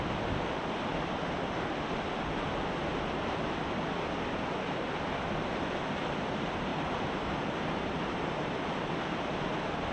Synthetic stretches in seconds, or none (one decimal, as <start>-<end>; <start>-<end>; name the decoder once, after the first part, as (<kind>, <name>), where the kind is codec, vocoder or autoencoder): 6.7-8.6 (vocoder, BigVGAN v2)